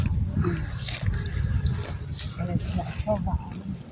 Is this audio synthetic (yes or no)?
no